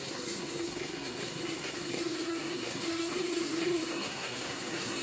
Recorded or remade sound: remade